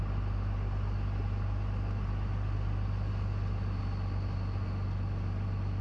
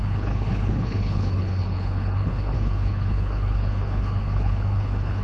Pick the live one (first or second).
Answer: first